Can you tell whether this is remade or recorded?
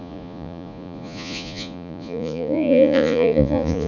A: remade